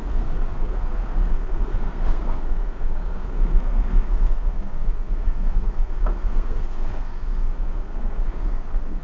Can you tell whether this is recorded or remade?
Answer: remade